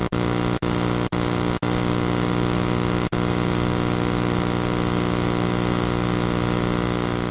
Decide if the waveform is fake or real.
real